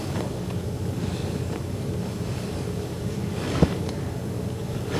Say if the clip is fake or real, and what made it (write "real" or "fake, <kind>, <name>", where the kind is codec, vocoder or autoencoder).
fake, codec, DAC